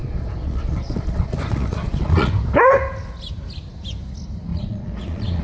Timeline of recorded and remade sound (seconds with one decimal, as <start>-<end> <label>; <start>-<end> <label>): 0.0-2.3 remade; 2.3-4.5 recorded; 4.5-5.4 remade